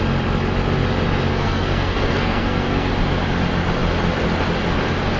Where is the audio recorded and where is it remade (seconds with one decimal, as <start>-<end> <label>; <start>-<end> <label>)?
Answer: 0.0-1.3 recorded; 1.3-2.9 remade; 2.9-5.2 recorded